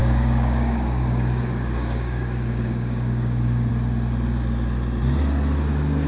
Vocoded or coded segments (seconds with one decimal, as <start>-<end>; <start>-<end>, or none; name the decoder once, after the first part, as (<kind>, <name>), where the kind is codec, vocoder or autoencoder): 0.0-3.7 (codec, DAC)